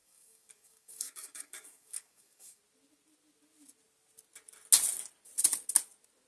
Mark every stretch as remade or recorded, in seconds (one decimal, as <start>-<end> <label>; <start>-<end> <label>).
0.0-2.6 remade; 2.6-6.3 recorded